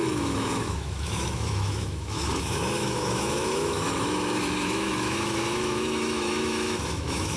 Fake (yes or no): yes